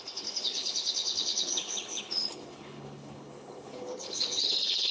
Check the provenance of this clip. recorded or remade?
remade